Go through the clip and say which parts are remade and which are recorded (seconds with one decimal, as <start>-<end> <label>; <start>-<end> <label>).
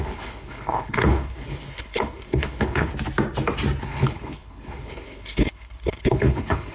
0.0-2.9 remade; 2.9-3.8 recorded; 3.8-6.7 remade